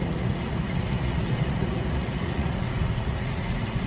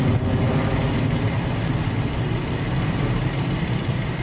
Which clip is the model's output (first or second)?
first